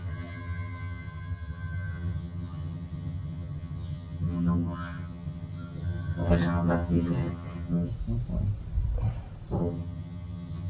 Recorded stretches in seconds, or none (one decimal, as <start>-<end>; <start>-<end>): 7.9-9.6